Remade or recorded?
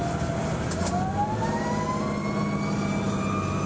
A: recorded